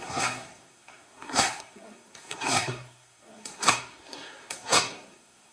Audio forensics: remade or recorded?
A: remade